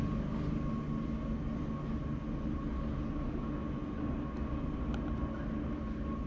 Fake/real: real